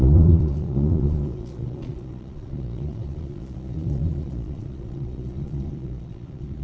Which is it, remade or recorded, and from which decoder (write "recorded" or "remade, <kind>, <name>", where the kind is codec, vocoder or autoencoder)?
remade, vocoder, Vocos